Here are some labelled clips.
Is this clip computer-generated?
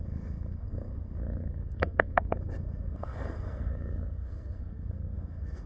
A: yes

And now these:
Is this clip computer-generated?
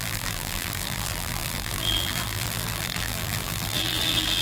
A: yes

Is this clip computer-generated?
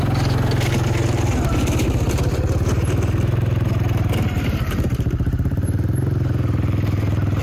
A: yes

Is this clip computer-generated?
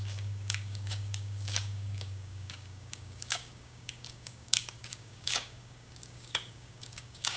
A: yes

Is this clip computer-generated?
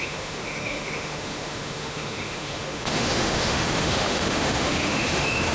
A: yes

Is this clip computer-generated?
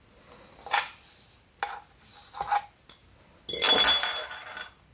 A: no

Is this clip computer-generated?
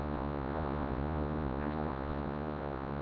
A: yes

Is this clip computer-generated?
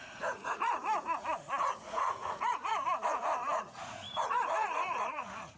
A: yes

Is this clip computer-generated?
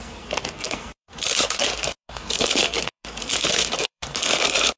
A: yes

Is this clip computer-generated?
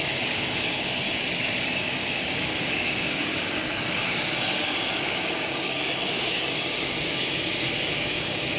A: yes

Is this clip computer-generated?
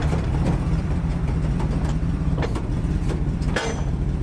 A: yes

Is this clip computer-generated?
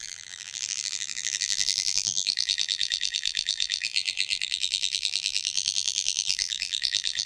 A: yes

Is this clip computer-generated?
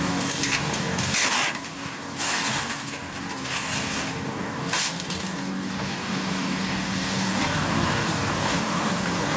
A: yes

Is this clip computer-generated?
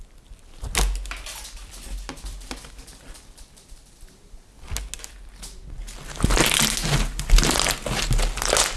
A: no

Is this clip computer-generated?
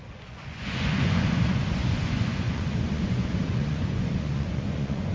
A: yes